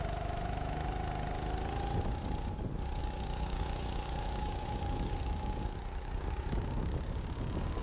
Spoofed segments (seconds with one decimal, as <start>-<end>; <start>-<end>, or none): 3.0-7.8